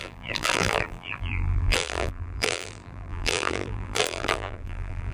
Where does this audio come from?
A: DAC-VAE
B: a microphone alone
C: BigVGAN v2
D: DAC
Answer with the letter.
C